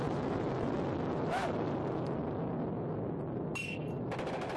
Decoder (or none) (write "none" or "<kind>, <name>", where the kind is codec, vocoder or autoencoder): none